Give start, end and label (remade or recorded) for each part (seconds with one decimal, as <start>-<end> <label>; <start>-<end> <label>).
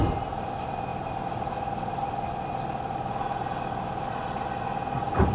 0.0-5.3 recorded